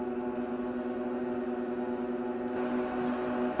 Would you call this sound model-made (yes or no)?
no